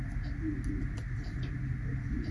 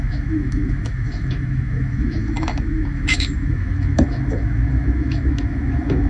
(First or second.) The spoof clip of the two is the second